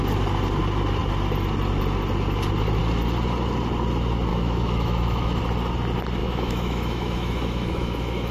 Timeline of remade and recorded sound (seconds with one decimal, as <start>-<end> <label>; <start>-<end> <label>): 0.0-4.3 recorded; 4.3-5.4 remade; 5.4-6.2 recorded; 6.2-8.3 remade